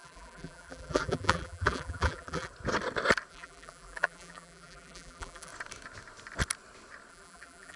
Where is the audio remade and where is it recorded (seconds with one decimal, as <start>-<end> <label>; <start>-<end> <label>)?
0.0-2.5 remade; 2.5-3.3 recorded; 3.3-5.5 remade; 5.5-7.1 recorded; 7.1-7.8 remade

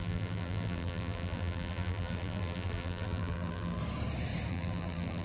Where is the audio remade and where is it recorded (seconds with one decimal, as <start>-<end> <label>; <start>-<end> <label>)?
0.0-3.8 remade; 3.8-4.5 recorded; 4.5-5.2 remade

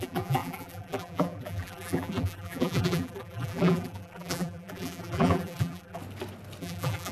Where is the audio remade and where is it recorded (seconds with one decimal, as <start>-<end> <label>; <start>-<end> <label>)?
0.0-6.0 remade; 6.0-6.6 recorded; 6.6-7.1 remade

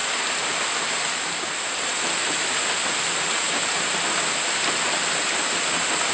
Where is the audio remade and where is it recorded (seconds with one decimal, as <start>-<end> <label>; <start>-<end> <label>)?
0.0-6.1 recorded

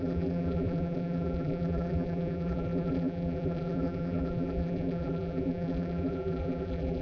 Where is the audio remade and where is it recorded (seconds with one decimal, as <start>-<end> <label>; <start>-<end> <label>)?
0.0-7.0 remade